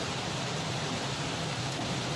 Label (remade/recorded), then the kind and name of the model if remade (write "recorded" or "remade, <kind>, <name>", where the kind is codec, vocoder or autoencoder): remade, vocoder, BigVGAN v2